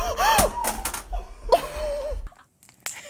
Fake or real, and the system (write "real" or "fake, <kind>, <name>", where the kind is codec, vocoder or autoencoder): real